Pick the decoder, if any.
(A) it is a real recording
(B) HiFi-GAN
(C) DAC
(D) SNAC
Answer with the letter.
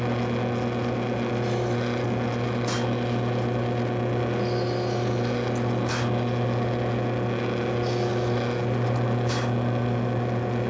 A